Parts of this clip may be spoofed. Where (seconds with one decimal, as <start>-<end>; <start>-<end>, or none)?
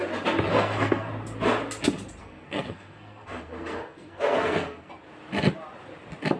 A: 0.5-1.1; 2.2-4.9